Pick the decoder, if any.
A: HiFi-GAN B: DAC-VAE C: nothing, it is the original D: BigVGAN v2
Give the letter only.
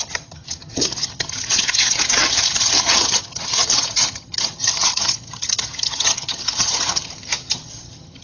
A